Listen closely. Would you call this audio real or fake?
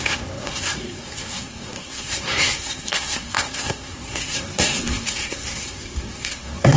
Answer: fake